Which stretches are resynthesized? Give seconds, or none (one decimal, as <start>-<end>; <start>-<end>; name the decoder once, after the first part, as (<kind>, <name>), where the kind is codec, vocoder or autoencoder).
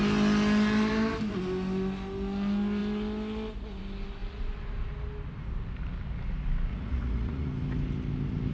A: 6.7-7.5 (vocoder, Vocos)